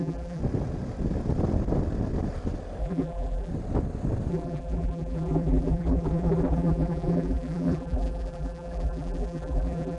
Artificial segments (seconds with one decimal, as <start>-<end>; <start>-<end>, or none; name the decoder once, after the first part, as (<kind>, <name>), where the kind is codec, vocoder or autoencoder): 0.0-0.4 (vocoder, BigVGAN v2); 2.8-3.5; 4.3-10.0